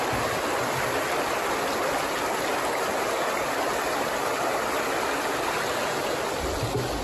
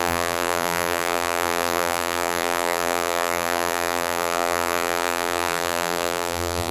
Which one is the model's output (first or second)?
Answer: second